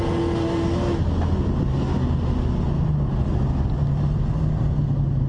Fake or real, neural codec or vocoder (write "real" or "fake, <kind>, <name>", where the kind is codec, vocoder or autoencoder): real